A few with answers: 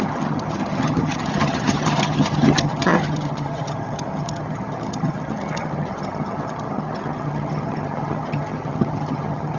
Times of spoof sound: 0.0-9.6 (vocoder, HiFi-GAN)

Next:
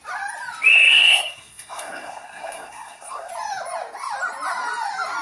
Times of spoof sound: 0.7-3.3 (codec, SNAC)

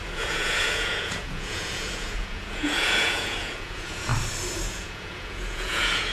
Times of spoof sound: 0.0-4.1 (vocoder, Vocos); 4.7-6.1

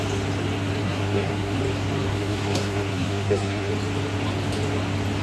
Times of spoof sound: 0.8-1.6 (codec, SNAC); 2.1-3.7

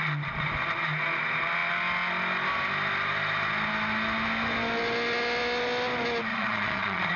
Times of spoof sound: 6.3-7.2 (vocoder, Vocos)

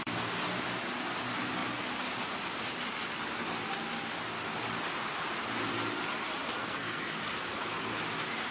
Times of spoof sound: 6.6-7.2 (codec, SNAC)

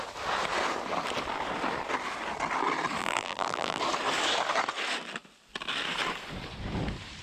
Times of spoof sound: 3.0-3.8 (vocoder, BigVGAN v2)

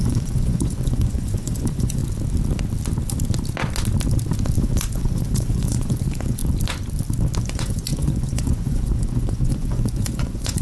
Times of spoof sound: 0.0-2.0 (vocoder, Vocos); 4.6-6.4; 7.4-10.6